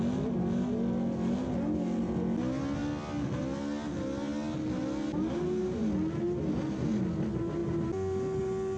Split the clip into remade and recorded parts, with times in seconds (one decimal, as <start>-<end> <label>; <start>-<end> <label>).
0.0-8.8 recorded